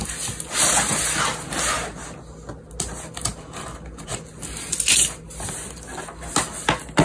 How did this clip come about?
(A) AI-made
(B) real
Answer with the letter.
B